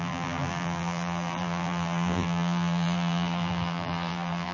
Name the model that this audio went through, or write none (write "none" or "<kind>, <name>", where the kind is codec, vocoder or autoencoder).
vocoder, BigVGAN v2